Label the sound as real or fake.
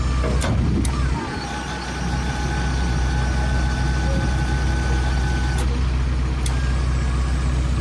real